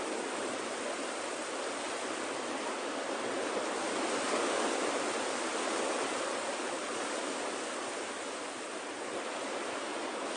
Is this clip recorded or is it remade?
recorded